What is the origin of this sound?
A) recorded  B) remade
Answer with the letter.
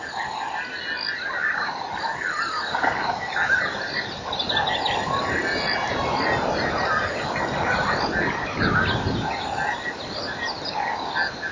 A